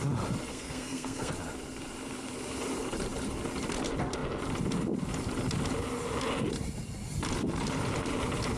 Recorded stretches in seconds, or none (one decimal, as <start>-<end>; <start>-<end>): 0.0-0.5; 1.3-8.6